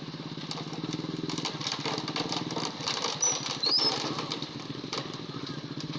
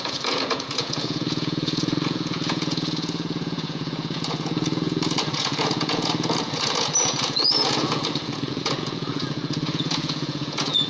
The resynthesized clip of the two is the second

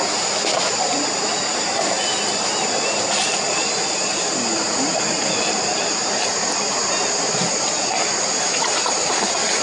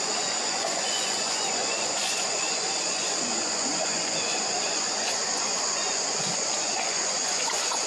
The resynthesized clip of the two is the second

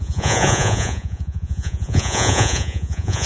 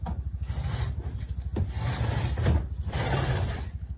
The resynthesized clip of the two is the first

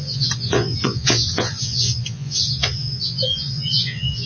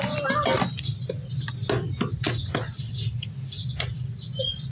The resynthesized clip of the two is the first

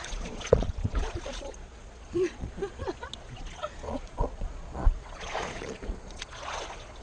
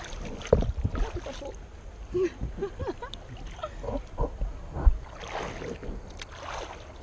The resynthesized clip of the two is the first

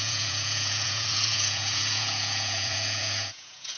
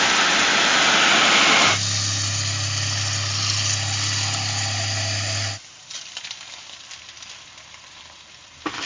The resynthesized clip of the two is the first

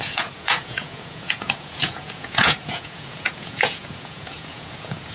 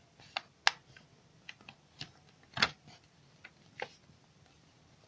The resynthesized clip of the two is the first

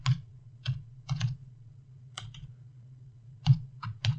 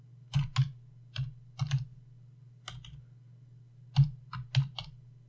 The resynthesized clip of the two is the first